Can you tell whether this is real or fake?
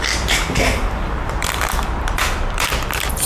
fake